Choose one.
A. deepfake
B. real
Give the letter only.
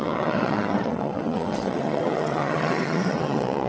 A